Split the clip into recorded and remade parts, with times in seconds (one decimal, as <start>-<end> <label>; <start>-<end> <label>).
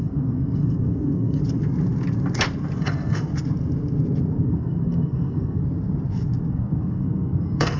0.0-1.4 remade; 1.4-2.8 recorded; 2.8-3.3 remade; 3.3-4.4 recorded; 4.4-5.6 remade; 5.6-6.5 recorded; 6.5-7.8 remade